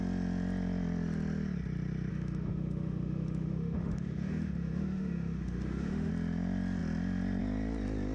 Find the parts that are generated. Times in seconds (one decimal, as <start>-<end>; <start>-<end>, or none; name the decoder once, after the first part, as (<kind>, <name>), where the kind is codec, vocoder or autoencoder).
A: 2.1-6.1 (autoencoder, DAC-VAE)